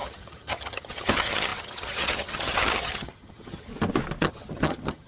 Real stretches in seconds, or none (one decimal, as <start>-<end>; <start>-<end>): 3.7-4.2